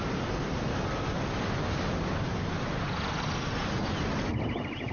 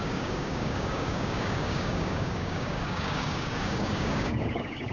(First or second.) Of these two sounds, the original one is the first